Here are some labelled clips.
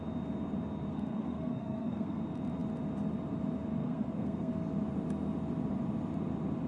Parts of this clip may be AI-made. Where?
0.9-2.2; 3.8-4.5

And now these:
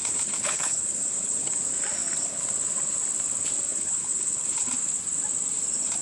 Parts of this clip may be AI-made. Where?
0.0-1.6; 3.7-4.7

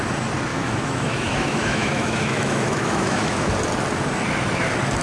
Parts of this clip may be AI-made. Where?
0.5-3.5

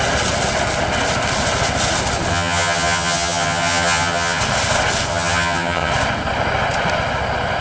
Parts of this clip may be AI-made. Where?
2.3-4.4; 5.1-5.9

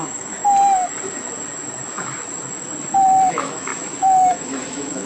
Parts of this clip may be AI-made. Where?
0.0-0.4; 3.3-3.7; 4.3-5.1

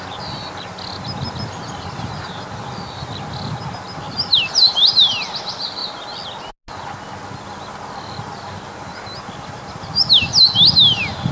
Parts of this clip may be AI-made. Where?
none

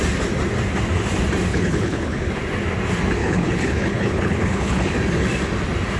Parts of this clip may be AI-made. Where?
1.5-2.3; 3.2-4.9